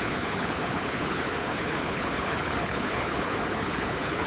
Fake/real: fake